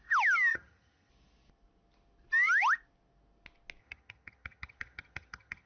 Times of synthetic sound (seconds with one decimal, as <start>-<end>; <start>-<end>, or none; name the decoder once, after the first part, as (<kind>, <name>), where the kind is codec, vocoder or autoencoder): 0.5-1.1 (vocoder, HiFi-GAN); 3.8-5.7